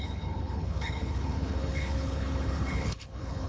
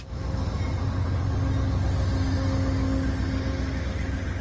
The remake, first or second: first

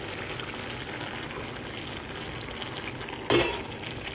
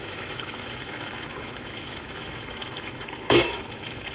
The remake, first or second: second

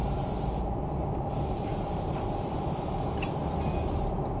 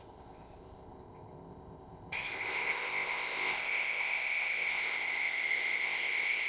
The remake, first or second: second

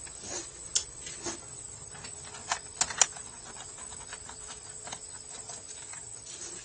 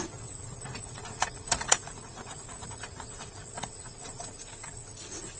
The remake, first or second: second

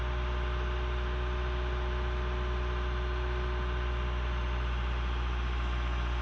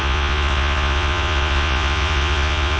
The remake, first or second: second